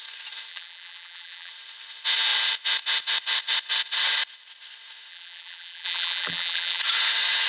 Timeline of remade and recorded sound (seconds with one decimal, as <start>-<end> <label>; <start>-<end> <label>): 0.0-0.5 recorded; 0.5-1.5 remade; 1.5-5.1 recorded; 5.1-6.8 remade; 6.8-7.5 recorded